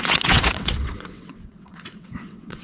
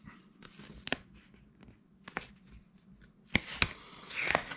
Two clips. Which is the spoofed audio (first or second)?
first